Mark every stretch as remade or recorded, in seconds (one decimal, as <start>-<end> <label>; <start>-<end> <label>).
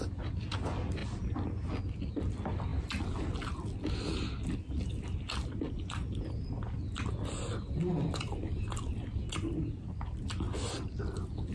0.0-11.5 recorded